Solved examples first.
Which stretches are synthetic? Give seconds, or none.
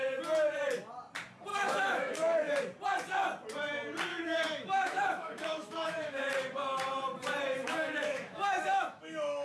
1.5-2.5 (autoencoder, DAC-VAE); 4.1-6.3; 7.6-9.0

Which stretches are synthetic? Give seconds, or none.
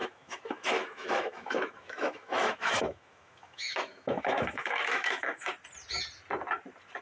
0.0-5.5 (autoencoder, DAC-VAE)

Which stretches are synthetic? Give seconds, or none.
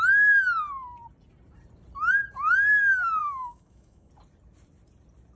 3.2-4.1 (autoencoder, DAC-VAE)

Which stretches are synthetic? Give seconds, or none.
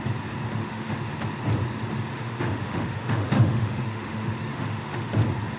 0.6-1.1 (autoencoder, DAC-VAE); 2.1-5.1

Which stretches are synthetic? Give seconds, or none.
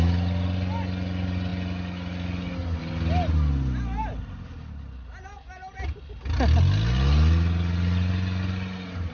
none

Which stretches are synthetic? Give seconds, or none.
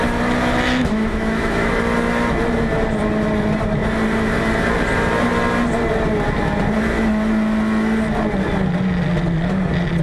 0.8-1.7 (autoencoder, DAC-VAE)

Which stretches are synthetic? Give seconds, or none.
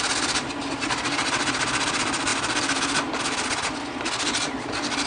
none